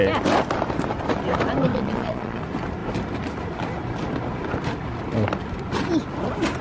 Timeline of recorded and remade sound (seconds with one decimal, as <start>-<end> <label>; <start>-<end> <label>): 0.0-1.7 recorded; 1.7-2.4 remade; 2.4-6.6 recorded